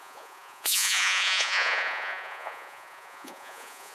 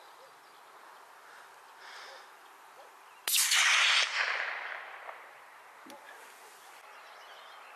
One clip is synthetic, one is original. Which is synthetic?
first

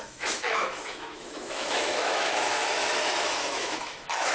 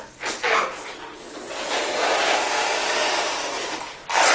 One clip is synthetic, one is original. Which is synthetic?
first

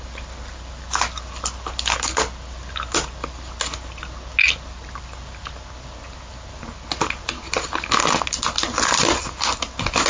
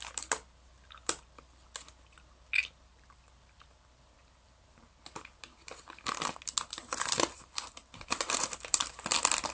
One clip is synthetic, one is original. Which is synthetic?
second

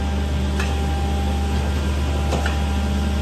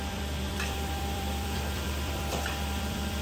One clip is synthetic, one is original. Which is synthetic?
second